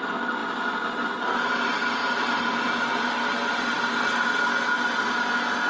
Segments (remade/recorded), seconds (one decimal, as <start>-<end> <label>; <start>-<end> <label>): 0.0-5.7 recorded